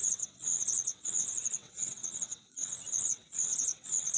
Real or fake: fake